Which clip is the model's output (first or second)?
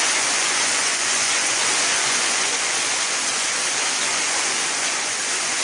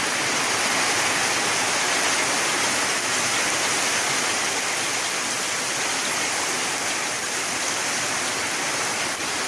first